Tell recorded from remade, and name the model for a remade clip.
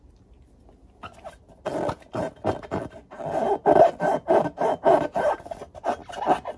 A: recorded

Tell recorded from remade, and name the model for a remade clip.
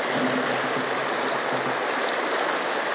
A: recorded